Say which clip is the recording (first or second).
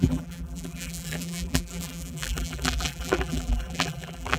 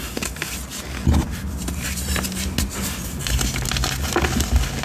second